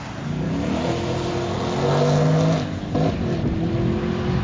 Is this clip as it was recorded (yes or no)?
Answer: yes